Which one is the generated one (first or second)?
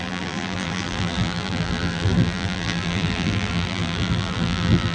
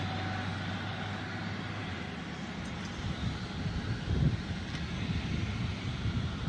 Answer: first